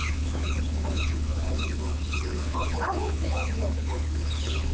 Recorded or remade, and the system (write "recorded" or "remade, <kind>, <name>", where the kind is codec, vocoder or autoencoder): remade, codec, HILCodec